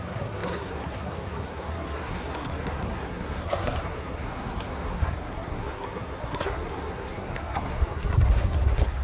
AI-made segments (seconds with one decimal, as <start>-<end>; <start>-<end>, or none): 0.0-9.0